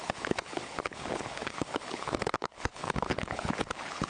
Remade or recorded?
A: remade